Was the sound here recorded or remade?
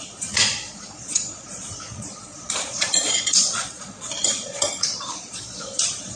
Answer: remade